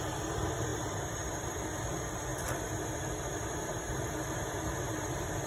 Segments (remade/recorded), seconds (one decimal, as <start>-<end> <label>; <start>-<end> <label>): 0.0-2.3 remade; 2.3-5.0 recorded; 5.0-5.5 remade

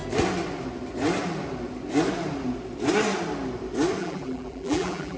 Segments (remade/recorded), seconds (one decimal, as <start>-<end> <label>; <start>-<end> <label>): 0.0-4.0 recorded; 4.0-5.2 remade